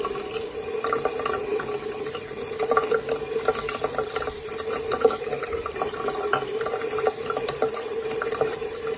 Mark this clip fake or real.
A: fake